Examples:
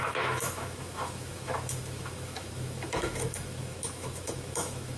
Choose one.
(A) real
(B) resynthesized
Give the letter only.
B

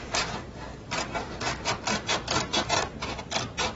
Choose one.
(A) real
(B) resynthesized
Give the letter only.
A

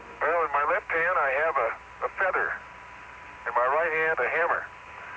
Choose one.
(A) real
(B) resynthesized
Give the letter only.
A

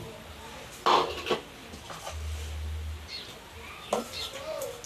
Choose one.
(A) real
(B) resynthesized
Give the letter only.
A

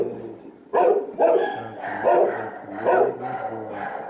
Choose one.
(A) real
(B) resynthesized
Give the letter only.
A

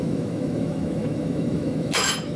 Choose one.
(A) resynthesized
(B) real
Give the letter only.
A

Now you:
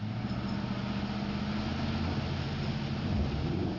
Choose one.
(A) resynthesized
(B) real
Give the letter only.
B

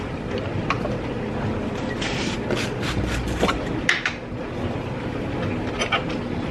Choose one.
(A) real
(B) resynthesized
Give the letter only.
A